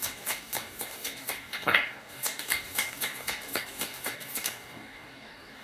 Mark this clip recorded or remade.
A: remade